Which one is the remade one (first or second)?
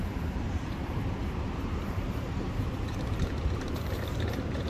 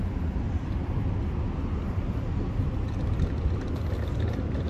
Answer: first